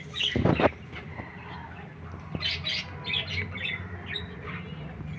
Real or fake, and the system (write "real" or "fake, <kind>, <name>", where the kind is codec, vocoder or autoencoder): real